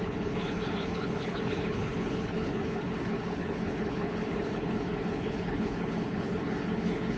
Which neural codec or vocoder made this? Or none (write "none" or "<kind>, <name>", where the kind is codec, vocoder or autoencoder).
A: codec, HILCodec